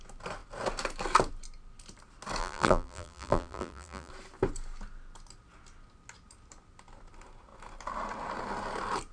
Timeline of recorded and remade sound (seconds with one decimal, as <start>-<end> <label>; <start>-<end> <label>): 0.0-2.4 recorded; 2.4-4.1 remade; 4.1-9.1 recorded